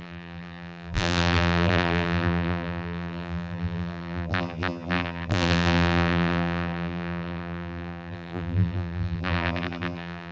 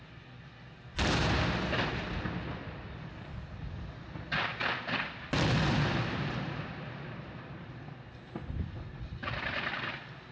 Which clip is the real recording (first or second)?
second